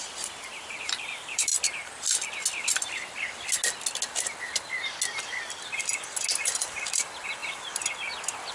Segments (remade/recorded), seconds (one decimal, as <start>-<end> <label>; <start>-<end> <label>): 0.0-1.5 remade; 1.5-6.6 recorded; 6.6-7.4 remade; 7.4-8.5 recorded